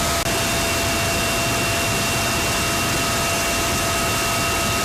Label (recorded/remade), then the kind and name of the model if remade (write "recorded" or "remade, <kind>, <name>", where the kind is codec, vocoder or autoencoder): recorded